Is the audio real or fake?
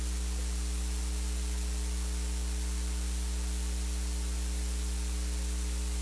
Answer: real